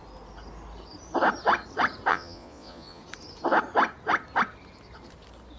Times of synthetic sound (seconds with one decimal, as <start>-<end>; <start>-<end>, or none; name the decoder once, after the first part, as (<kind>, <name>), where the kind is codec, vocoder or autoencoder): 2.1-3.0 (vocoder, Vocos)